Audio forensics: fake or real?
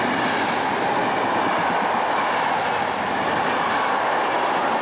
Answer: real